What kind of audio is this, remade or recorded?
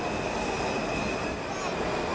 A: recorded